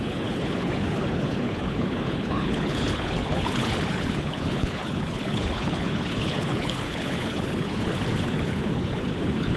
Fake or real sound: fake